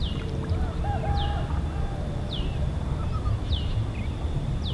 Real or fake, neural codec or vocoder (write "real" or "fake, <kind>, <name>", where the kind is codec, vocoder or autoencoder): real